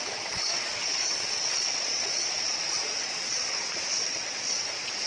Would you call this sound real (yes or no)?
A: no